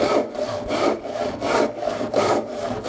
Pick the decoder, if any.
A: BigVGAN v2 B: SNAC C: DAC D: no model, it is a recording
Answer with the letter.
C